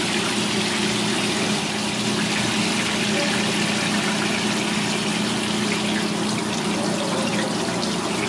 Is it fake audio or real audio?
real